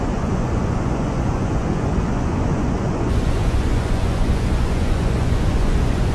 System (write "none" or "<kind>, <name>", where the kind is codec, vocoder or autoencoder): vocoder, Vocos